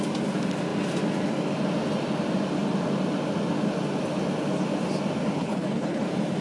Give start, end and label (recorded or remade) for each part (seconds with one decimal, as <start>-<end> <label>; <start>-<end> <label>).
0.0-5.4 recorded; 5.4-6.0 remade; 6.0-6.4 recorded